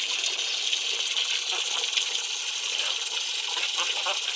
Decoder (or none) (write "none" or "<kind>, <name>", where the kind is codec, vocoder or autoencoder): none